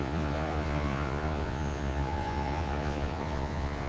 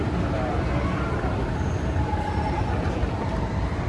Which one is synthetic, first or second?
first